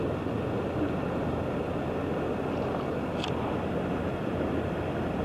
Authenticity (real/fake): real